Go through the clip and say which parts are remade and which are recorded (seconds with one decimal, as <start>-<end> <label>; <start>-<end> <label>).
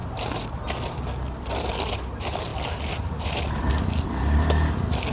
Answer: 0.0-5.1 recorded